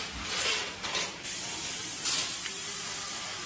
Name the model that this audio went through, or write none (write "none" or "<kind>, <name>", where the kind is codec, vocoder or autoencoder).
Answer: vocoder, BigVGAN v2